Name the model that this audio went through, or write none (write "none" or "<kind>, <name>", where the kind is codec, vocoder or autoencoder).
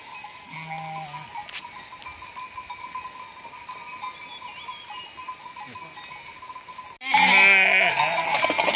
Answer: none